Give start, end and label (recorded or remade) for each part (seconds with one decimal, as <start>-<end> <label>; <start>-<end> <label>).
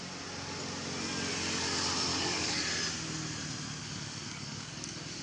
0.0-2.1 recorded; 2.1-2.6 remade; 2.6-3.8 recorded; 3.8-5.2 remade